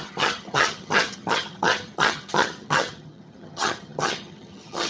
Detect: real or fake fake